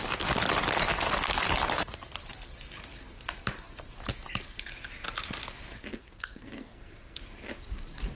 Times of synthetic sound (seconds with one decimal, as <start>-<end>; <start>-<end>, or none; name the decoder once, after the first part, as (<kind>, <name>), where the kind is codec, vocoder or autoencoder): 5.9-7.2 (codec, SNAC)